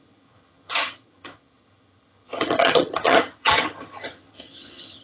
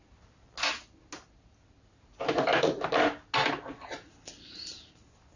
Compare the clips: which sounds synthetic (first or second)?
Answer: first